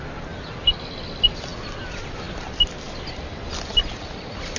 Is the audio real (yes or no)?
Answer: yes